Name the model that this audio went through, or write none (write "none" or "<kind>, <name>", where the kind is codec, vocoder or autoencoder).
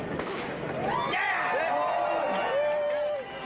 none